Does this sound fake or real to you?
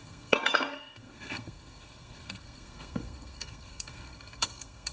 fake